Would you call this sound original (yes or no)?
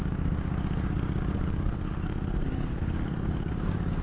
no